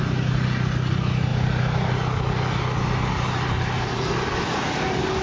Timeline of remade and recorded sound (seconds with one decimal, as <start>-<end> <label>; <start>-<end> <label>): 0.0-5.2 recorded